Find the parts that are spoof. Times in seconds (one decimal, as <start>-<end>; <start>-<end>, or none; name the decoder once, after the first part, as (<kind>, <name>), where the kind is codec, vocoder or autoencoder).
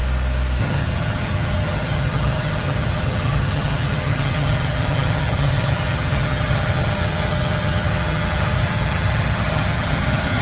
0.6-10.4 (vocoder, HiFi-GAN)